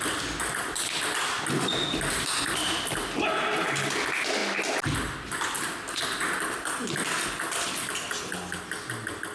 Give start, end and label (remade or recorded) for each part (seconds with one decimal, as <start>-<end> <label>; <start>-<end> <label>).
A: 0.0-9.3 recorded

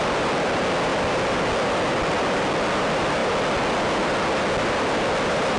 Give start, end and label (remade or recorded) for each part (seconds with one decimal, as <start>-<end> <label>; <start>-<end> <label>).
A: 0.0-5.6 recorded

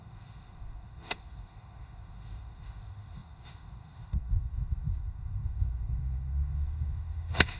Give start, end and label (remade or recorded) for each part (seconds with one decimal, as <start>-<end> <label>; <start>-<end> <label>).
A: 0.0-7.6 remade

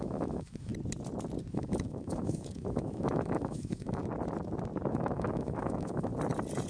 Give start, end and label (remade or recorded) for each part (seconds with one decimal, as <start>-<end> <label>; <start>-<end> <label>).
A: 0.0-0.7 remade; 0.7-1.5 recorded; 1.5-4.0 remade; 4.0-4.9 recorded; 4.9-6.1 remade; 6.1-6.7 recorded